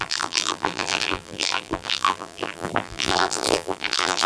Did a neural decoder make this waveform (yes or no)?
yes